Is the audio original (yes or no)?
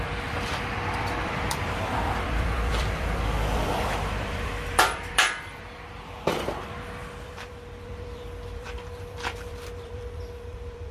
no